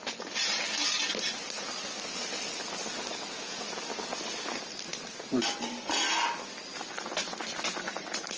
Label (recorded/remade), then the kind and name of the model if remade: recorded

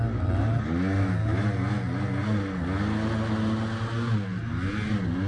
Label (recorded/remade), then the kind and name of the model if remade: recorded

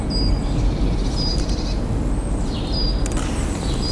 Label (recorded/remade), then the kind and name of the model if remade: recorded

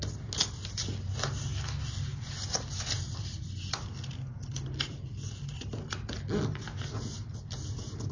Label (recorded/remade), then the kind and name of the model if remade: recorded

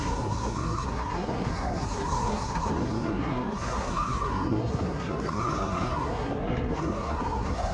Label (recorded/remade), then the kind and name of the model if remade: remade, codec, SNAC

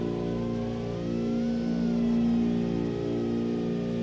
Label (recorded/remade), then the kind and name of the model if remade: recorded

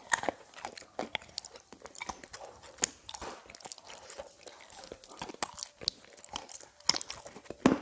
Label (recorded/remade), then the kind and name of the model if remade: recorded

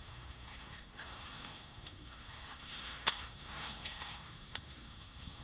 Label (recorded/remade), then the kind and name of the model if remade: remade, codec, SNAC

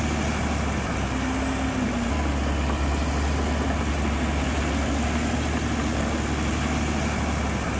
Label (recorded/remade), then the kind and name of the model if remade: recorded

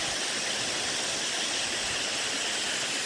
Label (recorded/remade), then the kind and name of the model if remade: recorded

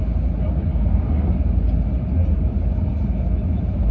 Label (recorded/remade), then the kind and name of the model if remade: recorded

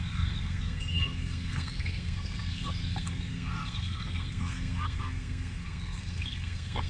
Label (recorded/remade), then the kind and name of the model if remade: remade, codec, SNAC